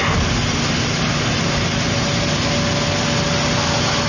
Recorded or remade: recorded